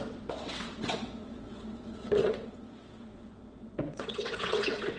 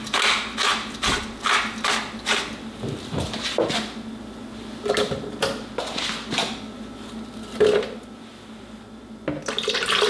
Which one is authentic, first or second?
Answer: second